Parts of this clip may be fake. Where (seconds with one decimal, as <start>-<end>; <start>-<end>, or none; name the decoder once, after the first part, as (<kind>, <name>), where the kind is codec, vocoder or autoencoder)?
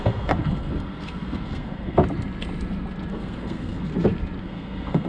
0.0-2.0 (codec, SNAC); 3.1-3.9; 4.4-5.1